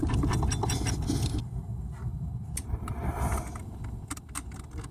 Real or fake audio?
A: real